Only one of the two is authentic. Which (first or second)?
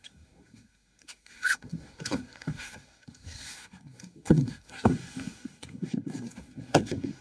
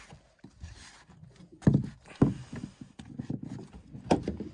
second